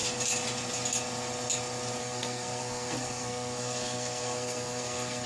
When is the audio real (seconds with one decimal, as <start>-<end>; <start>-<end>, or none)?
0.0-2.0